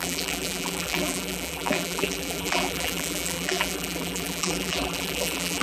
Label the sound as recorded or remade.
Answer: remade